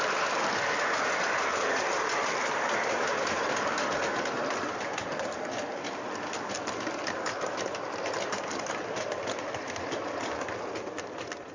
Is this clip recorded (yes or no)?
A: yes